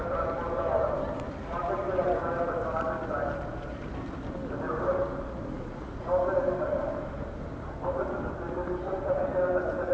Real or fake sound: real